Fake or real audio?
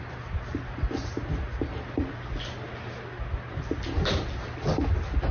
real